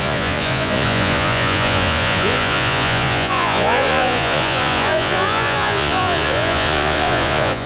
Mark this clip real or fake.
fake